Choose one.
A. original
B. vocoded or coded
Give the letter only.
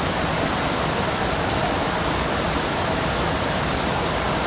A